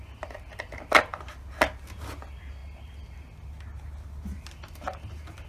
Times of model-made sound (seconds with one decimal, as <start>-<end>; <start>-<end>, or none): none